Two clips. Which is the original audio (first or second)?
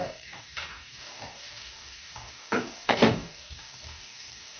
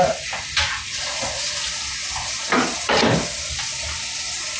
second